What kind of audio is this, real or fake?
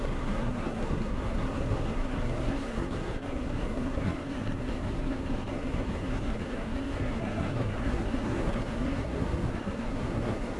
fake